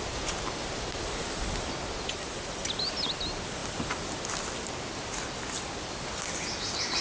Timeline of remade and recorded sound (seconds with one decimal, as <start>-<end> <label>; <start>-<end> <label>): 0.0-7.0 recorded